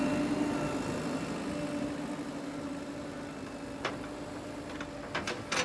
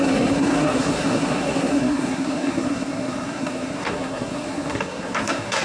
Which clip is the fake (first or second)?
second